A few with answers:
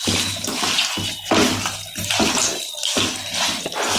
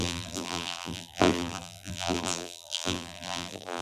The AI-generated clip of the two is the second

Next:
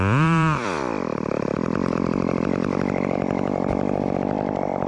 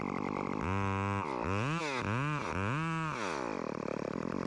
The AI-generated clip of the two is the first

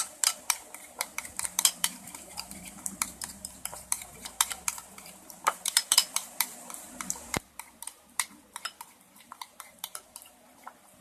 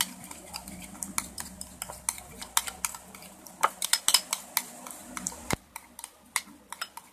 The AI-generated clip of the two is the first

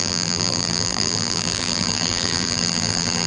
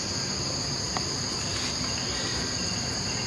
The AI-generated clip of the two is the first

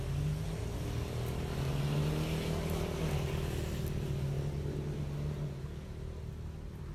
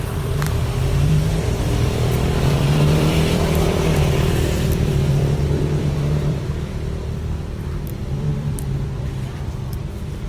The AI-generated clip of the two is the second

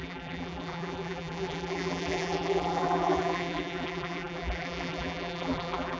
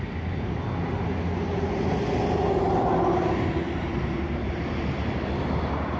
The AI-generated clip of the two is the first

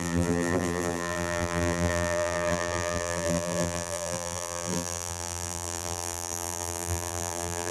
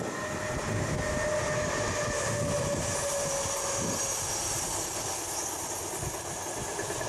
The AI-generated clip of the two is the first